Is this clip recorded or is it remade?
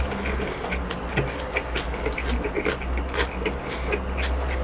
recorded